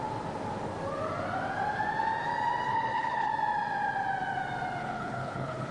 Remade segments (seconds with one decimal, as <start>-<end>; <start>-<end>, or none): 2.7-3.3; 4.8-5.7